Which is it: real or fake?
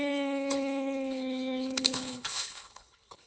fake